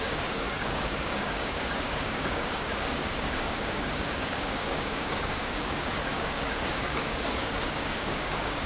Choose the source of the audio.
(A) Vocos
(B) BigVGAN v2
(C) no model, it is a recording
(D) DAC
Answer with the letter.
D